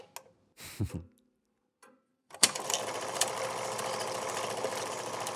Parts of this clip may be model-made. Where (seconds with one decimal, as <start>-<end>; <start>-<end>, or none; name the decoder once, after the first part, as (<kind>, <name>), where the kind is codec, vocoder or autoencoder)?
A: 2.1-4.9 (vocoder, BigVGAN v2)